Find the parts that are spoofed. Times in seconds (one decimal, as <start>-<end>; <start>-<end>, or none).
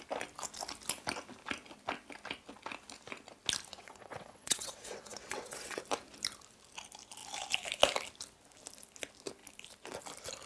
3.7-5.8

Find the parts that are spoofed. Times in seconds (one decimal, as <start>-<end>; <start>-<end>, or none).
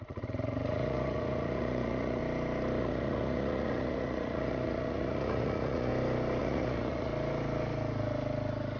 0.0-2.2; 2.8-5.9; 6.4-7.1